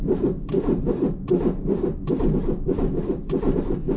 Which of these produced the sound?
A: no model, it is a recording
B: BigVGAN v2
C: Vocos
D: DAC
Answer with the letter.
B